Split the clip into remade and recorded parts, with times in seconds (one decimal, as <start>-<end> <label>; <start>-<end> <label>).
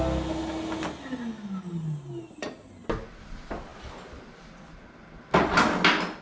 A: 0.0-6.2 recorded